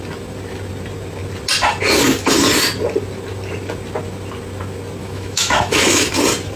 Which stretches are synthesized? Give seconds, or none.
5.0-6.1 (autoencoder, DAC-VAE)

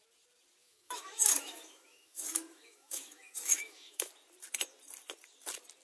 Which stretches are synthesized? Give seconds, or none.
0.6-4.1 (autoencoder, DAC-VAE)

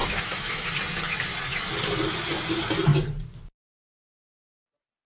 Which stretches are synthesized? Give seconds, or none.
0.0-0.7 (autoencoder, DAC-VAE)

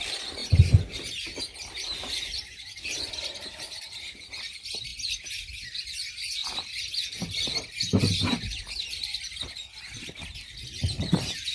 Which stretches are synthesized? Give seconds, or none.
none

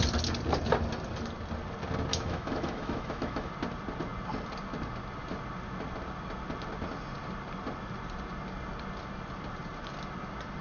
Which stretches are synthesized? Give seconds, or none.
2.1-3.5 (autoencoder, DAC-VAE)